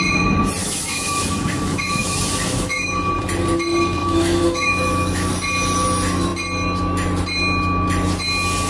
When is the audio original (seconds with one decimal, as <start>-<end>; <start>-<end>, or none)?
0.0-0.6; 3.1-4.0; 5.3-8.7